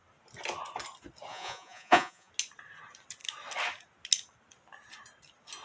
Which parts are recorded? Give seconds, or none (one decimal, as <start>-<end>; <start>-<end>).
0.0-1.3; 2.3-5.6